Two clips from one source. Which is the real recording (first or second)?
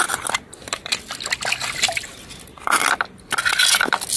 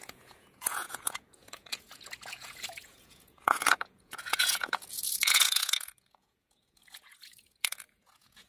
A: first